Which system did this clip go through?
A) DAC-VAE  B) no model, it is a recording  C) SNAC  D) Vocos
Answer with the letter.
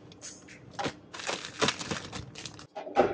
B